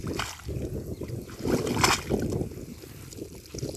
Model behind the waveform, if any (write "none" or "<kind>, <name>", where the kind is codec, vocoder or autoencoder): none